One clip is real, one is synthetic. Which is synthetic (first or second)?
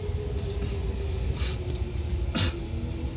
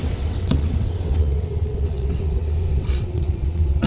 second